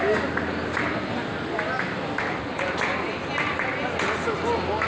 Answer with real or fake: real